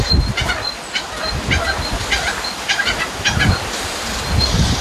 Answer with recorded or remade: recorded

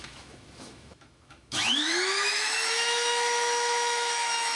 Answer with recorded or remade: remade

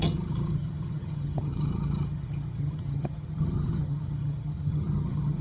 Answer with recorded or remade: remade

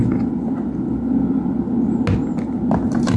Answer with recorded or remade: recorded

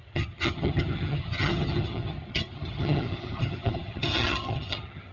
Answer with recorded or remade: remade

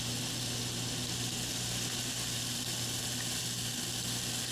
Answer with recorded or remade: recorded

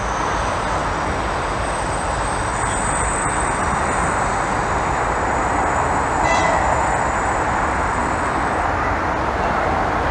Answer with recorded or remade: recorded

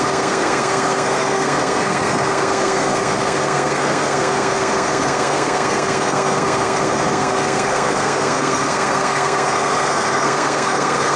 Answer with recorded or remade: remade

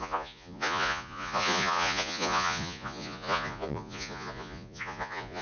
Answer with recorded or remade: remade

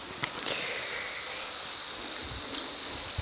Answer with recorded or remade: recorded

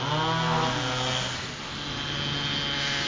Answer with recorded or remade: recorded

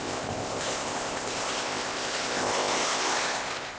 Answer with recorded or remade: remade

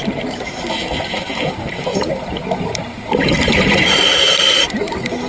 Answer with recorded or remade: remade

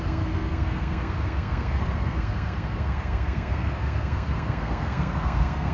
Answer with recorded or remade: remade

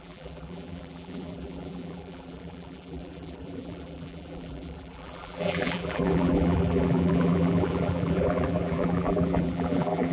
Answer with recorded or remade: remade